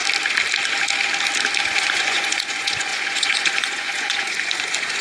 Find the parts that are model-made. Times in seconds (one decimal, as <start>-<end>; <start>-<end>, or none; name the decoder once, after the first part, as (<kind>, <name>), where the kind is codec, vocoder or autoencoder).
1.6-5.0 (vocoder, Vocos)